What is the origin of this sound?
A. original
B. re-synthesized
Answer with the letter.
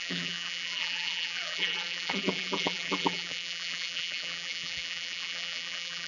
B